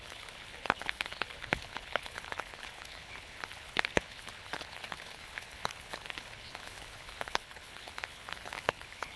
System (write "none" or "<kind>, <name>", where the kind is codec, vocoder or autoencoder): codec, HILCodec